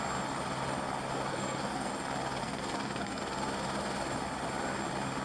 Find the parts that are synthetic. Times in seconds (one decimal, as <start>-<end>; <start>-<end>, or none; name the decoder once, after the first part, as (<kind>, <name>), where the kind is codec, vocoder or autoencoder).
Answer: 1.3-1.9 (codec, SNAC); 2.4-3.2